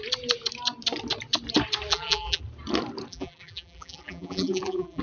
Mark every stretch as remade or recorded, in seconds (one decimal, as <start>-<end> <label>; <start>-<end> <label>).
0.0-1.9 recorded; 1.9-2.4 remade; 2.4-3.1 recorded; 3.1-5.0 remade